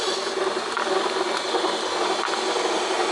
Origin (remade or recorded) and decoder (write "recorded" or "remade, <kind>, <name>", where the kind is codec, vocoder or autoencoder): recorded